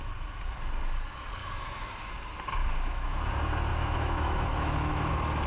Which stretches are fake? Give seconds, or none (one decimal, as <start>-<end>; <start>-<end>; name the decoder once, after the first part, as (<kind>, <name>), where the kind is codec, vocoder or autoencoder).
1.4-2.1 (autoencoder, DAC-VAE); 2.6-3.2; 3.7-5.1